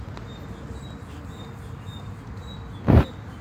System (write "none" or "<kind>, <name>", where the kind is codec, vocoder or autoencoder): none